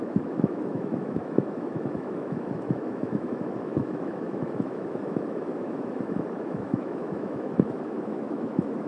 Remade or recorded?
remade